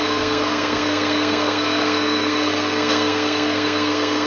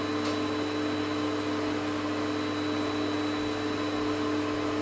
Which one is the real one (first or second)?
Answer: second